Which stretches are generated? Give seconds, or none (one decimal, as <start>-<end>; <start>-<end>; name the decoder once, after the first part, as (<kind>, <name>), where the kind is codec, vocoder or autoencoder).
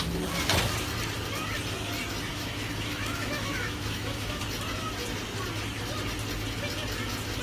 2.3-4.4 (autoencoder, DAC-VAE)